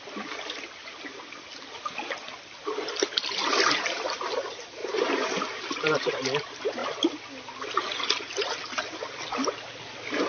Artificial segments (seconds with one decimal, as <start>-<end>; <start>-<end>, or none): 4.8-6.1